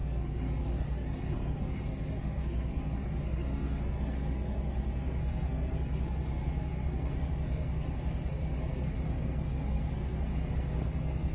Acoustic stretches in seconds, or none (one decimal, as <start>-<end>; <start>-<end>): none